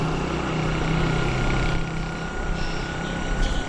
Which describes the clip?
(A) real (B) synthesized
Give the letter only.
A